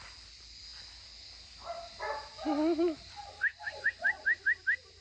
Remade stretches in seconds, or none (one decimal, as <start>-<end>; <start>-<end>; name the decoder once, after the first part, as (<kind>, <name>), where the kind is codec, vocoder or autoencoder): 3.5-4.4 (vocoder, BigVGAN v2)